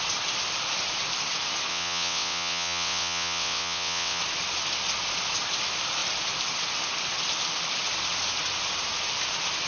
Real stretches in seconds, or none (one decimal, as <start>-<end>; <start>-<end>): 0.0-1.7; 4.2-9.7